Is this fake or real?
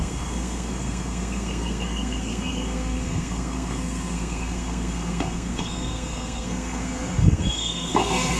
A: fake